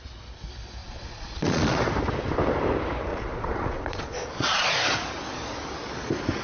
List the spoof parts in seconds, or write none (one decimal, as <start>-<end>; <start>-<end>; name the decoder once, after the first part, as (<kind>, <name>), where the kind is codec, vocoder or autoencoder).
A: 0.8-1.8 (vocoder, Vocos); 3.1-4.7